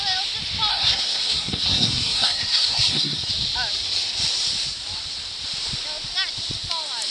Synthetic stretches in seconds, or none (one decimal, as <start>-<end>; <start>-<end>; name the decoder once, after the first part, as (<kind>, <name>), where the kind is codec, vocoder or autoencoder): 0.7-3.3 (codec, SNAC)